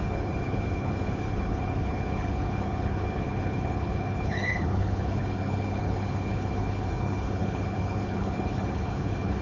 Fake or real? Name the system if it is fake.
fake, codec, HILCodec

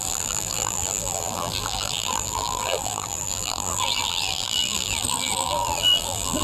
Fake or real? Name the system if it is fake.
fake, vocoder, BigVGAN v2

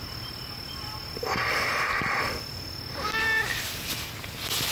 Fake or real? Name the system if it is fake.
real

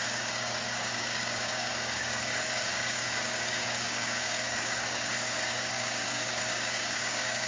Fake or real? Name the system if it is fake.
fake, codec, DAC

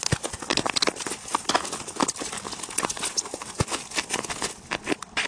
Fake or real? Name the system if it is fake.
real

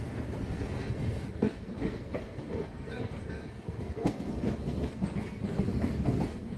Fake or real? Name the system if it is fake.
fake, codec, SNAC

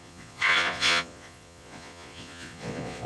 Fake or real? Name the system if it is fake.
fake, vocoder, Vocos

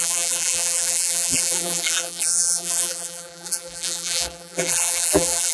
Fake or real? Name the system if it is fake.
fake, vocoder, BigVGAN v2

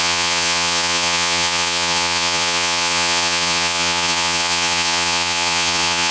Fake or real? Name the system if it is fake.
fake, vocoder, Vocos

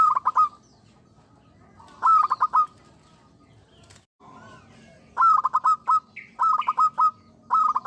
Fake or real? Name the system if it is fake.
real